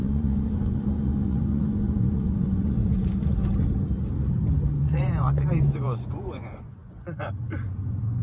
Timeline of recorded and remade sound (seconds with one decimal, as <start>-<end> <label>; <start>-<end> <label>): 0.0-3.4 remade; 3.4-4.8 recorded; 4.8-8.2 remade